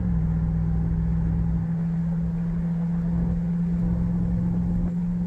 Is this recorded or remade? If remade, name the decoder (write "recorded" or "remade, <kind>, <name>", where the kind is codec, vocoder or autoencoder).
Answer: recorded